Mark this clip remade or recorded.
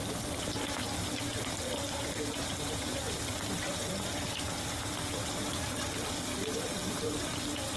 recorded